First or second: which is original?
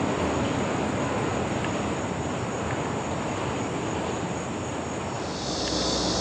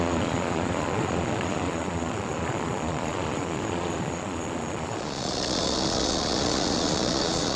first